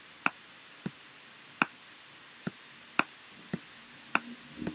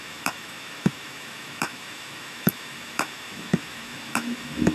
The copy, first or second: second